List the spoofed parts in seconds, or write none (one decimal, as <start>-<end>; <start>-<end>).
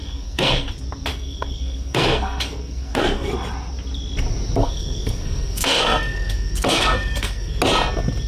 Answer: 0.0-0.7; 1.1-3.3; 4.6-7.6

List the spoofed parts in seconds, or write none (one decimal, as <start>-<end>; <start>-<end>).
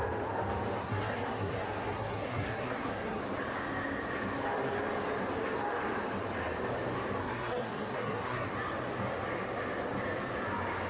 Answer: 0.8-3.2; 7.2-8.5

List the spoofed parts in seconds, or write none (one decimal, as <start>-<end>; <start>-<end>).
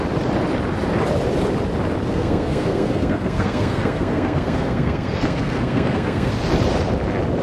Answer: 2.1-6.3